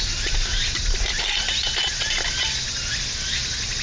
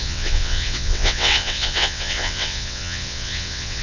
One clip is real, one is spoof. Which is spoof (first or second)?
second